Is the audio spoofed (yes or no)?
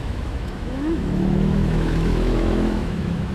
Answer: yes